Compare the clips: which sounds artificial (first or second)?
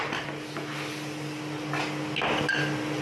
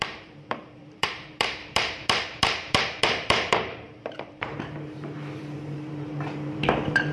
second